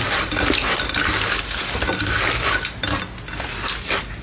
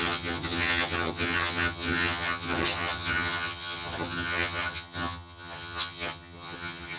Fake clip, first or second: second